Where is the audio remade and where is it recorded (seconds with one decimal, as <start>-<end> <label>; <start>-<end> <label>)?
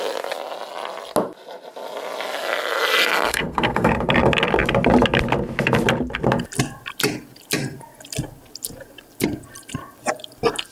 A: 0.0-3.3 recorded; 3.3-3.9 remade; 3.9-10.7 recorded